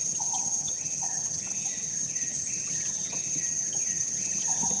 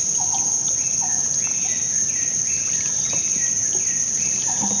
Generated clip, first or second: first